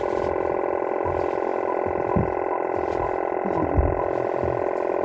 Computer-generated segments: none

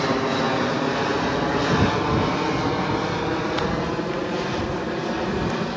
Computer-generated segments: none

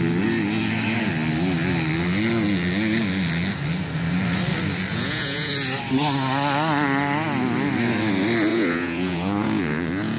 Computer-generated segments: 4.9-5.5; 8.5-10.2

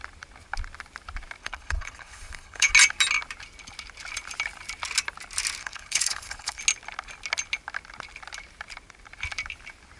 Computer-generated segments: 1.4-2.7; 5.6-6.6